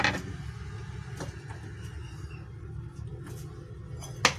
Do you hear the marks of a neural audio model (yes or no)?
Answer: no